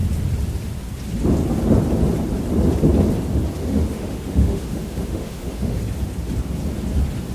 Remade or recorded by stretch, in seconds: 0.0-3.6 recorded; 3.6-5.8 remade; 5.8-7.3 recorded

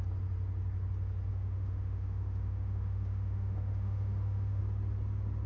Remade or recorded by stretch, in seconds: 0.0-1.3 recorded; 1.3-4.6 remade; 4.6-5.5 recorded

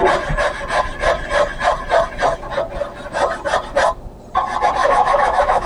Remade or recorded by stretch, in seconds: 0.0-4.8 recorded; 4.8-5.7 remade